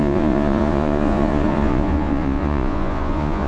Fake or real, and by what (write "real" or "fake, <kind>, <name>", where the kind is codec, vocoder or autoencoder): fake, vocoder, Vocos